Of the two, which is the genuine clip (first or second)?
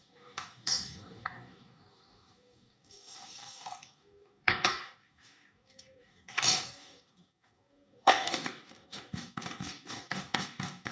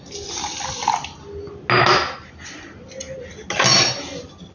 second